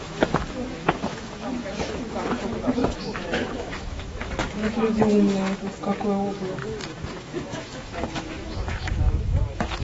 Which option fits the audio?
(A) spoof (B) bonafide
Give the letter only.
A